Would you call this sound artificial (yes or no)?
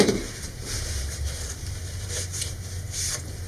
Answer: yes